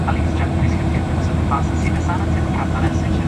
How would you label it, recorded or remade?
remade